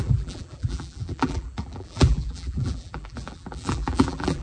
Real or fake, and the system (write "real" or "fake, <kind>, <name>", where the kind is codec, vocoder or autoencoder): fake, vocoder, BigVGAN v2